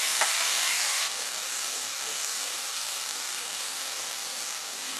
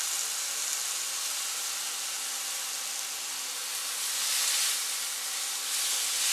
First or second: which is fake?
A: first